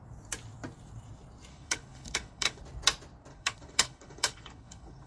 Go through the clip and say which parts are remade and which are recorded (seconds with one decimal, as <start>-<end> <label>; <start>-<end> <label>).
0.0-1.5 recorded; 1.5-2.6 remade; 2.6-3.3 recorded; 3.3-5.1 remade